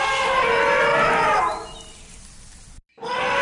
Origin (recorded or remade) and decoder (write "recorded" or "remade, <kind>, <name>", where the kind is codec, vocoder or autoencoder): recorded